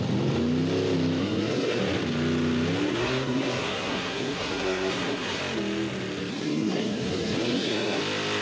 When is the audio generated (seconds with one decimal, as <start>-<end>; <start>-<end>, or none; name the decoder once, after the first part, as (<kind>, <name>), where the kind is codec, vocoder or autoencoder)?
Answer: 1.2-1.8 (codec, SNAC); 2.9-5.4; 6.3-8.0